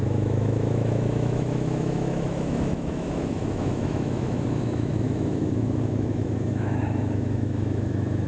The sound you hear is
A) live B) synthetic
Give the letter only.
B